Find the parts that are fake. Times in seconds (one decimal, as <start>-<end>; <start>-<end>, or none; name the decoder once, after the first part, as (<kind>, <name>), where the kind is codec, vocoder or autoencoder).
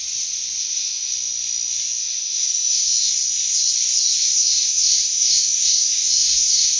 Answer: 0.6-1.1 (autoencoder, DAC-VAE); 2.0-3.1; 4.4-6.8